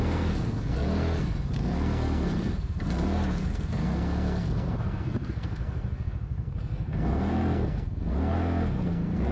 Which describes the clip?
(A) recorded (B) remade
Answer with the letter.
B